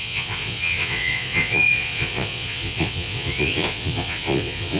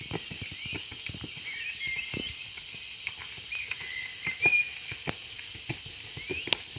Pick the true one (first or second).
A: second